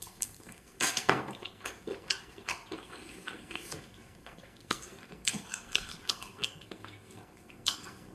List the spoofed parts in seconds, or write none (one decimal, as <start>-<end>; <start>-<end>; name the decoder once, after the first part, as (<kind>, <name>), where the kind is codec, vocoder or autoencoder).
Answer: 0.0-8.1 (codec, SNAC)

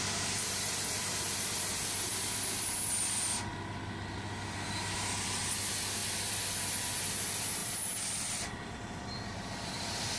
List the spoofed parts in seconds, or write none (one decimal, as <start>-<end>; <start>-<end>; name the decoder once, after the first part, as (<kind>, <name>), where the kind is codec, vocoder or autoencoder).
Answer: 7.6-10.2 (vocoder, BigVGAN v2)

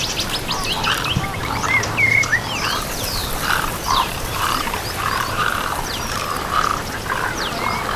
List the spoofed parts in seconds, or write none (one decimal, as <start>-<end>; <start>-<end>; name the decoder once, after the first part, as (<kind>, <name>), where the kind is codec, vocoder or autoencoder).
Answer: 1.4-2.2 (vocoder, BigVGAN v2); 3.2-6.2

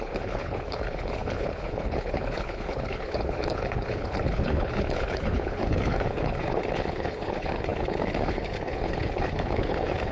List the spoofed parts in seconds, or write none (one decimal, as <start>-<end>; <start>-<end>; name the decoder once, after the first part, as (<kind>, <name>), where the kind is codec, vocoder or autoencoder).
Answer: 0.0-10.1 (codec, HILCodec)